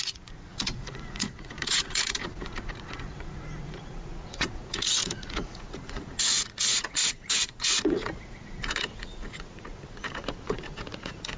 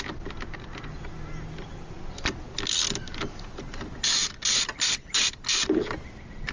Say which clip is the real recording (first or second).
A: second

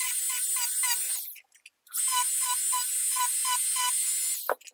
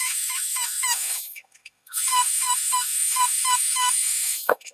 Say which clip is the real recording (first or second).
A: first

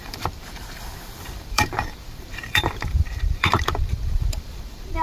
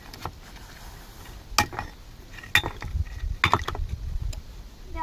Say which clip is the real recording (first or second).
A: second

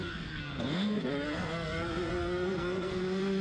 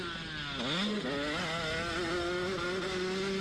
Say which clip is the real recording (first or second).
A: second